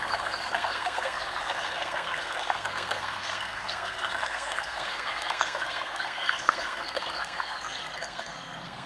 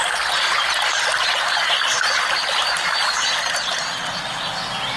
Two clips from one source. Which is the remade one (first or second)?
first